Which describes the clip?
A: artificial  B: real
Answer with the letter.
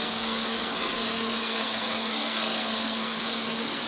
A